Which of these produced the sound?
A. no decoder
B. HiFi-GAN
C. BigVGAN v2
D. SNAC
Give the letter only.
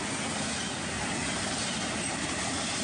A